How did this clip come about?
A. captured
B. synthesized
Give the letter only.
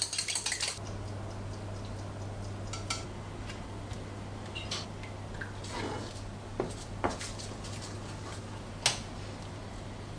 A